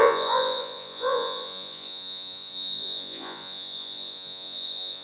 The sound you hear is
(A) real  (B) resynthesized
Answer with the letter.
B